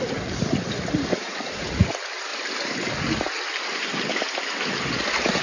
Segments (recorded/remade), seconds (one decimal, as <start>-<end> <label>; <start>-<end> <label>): 0.0-1.1 recorded; 1.1-1.9 remade; 1.9-5.4 recorded